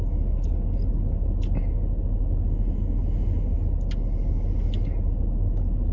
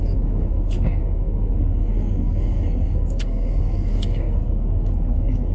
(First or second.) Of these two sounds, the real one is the first